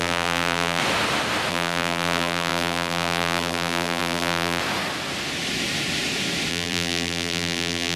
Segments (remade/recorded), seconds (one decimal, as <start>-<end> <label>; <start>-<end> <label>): 0.0-0.8 remade; 0.8-1.5 recorded; 1.5-4.6 remade; 4.6-6.5 recorded; 6.5-8.0 remade